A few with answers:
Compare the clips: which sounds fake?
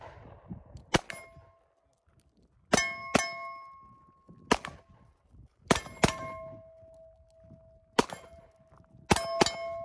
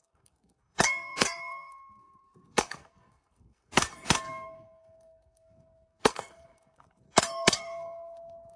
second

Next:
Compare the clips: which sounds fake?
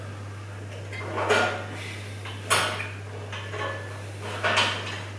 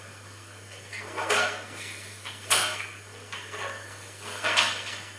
second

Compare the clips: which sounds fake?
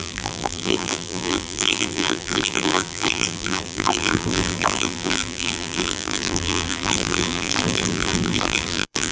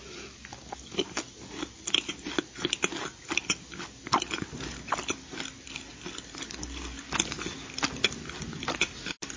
first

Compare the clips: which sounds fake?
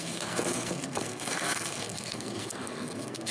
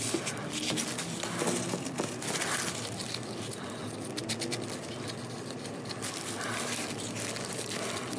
first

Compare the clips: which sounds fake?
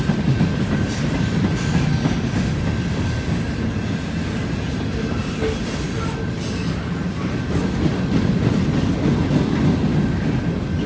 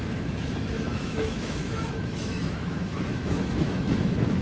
second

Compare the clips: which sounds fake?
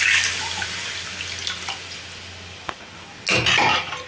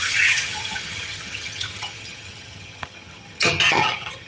second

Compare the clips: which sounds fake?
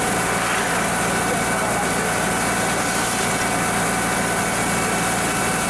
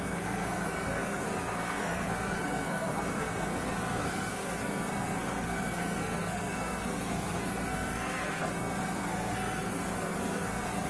second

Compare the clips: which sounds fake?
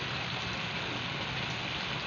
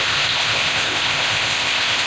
second